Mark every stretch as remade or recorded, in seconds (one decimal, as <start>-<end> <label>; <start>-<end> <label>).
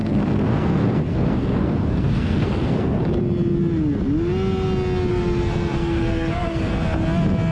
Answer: 0.0-3.0 remade; 3.0-5.1 recorded; 5.1-6.7 remade; 6.7-7.5 recorded